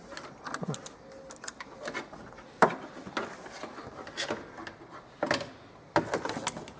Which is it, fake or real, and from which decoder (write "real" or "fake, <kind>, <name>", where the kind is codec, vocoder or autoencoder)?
real